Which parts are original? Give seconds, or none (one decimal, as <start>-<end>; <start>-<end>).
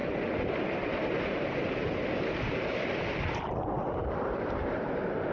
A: 0.0-5.3